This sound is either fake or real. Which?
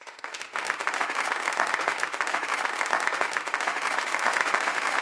fake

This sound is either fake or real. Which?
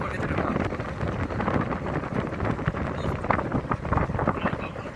real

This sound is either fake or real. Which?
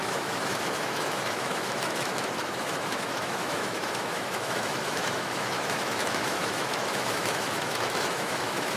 fake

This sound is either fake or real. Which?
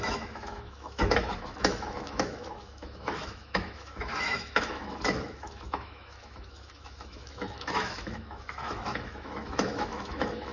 fake